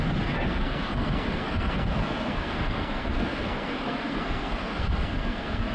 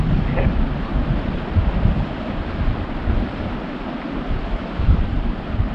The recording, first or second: second